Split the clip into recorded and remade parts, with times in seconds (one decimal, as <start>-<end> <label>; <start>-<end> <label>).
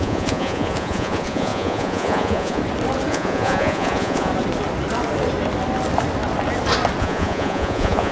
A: 0.0-2.6 remade; 2.6-3.1 recorded; 3.1-4.3 remade; 4.3-7.0 recorded; 7.0-8.1 remade